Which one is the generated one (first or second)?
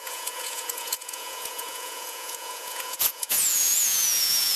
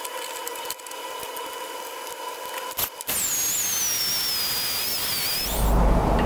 first